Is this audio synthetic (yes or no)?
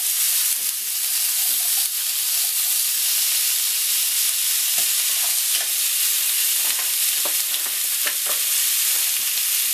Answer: no